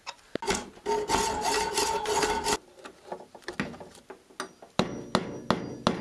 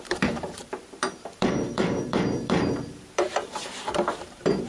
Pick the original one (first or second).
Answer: first